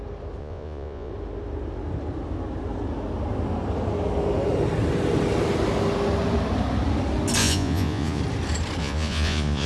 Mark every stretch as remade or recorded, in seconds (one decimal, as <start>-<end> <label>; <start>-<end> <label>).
0.0-0.4 recorded; 0.4-1.1 remade; 1.1-7.4 recorded; 7.4-8.2 remade; 8.2-8.8 recorded; 8.8-9.7 remade